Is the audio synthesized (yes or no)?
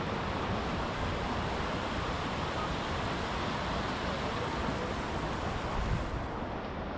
no